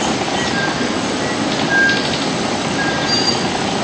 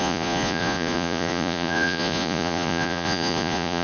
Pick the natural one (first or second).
first